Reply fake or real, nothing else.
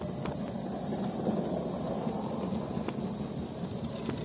real